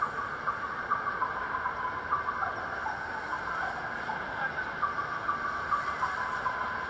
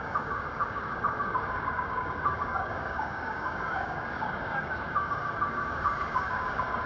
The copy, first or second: second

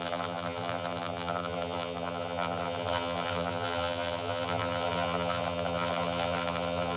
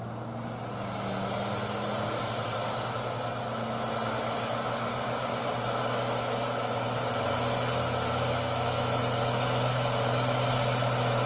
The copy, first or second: first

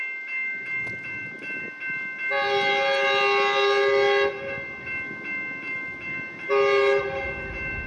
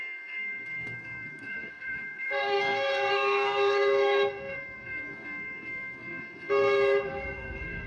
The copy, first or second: second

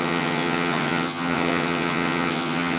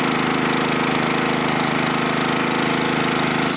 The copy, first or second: first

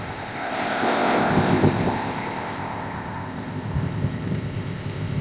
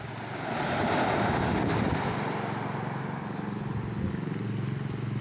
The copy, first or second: first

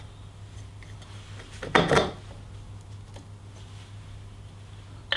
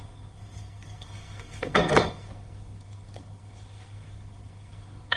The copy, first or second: second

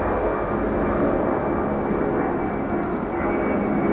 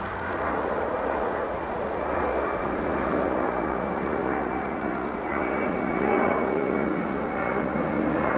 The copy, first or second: second